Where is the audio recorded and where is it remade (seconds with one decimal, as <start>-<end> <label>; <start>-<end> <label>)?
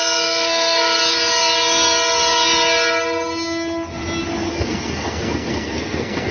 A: 0.0-1.0 remade; 1.0-4.5 recorded; 4.5-6.3 remade